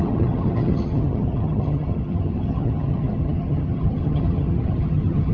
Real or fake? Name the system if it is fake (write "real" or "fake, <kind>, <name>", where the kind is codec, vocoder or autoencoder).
fake, vocoder, HiFi-GAN